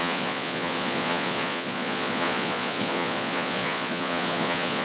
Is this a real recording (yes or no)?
no